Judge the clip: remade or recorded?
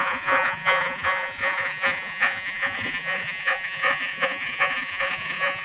remade